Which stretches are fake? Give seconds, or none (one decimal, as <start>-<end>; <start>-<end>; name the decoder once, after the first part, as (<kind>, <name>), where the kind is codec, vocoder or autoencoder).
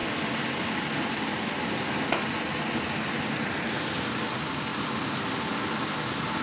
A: none